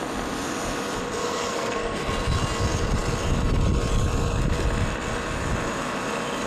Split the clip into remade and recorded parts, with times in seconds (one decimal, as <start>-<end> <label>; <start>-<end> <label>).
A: 0.0-1.2 recorded; 1.2-2.1 remade; 2.1-6.5 recorded